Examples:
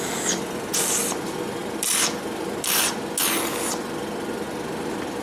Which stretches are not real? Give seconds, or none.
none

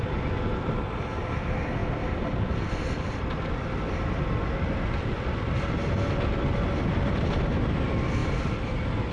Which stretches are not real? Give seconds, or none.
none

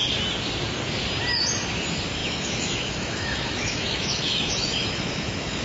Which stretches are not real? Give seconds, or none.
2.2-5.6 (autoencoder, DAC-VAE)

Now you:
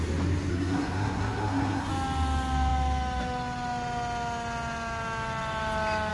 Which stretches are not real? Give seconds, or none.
0.5-1.9 (codec, SNAC)

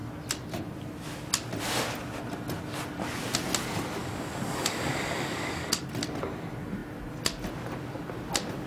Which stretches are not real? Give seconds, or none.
4.0-5.8 (codec, DAC)

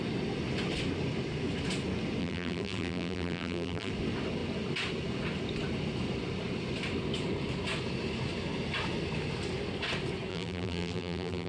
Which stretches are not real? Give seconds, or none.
2.2-3.9 (vocoder, BigVGAN v2); 10.3-11.5

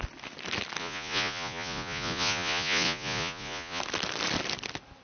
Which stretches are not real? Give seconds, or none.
0.8-3.8 (vocoder, Vocos)